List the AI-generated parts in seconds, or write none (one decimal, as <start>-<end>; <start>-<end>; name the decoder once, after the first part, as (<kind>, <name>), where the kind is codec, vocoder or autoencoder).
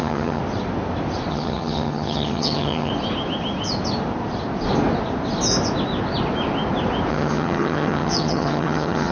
0.0-0.4 (vocoder, HiFi-GAN); 1.3-2.9; 7.1-9.1